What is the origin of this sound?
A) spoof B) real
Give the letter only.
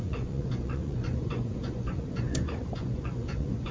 A